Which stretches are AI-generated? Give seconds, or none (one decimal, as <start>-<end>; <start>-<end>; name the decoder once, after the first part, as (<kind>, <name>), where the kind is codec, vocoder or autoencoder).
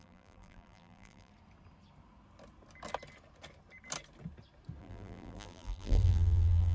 0.0-1.3 (vocoder, BigVGAN v2); 4.8-6.7